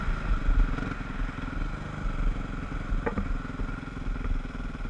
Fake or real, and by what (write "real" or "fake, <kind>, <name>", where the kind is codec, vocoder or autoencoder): real